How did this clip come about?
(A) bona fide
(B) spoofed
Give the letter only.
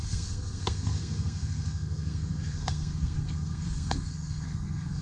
B